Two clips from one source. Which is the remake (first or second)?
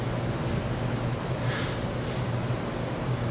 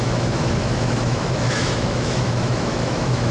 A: second